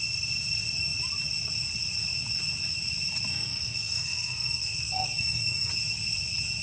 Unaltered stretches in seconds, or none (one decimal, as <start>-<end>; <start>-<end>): 0.0-3.3; 5.7-6.6